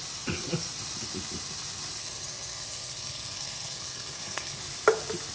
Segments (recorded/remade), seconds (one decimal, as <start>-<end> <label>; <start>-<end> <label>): 0.0-2.0 recorded; 2.0-4.6 remade; 4.6-5.3 recorded